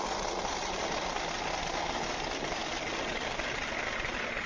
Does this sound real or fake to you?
real